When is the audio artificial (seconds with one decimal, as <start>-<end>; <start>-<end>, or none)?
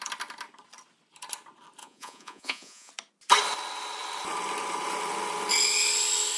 1.8-2.9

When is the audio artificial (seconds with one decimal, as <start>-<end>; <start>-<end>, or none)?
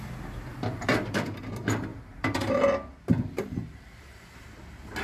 0.5-1.5; 1.9-2.6; 3.6-4.6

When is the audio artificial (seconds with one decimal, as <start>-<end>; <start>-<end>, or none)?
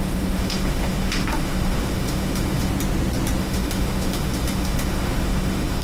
0.0-2.7; 3.4-5.8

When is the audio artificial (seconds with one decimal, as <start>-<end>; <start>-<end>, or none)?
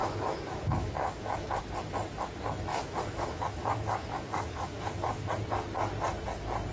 0.0-1.6; 2.7-5.3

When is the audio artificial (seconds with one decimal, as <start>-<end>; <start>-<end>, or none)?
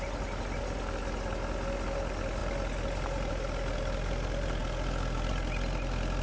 none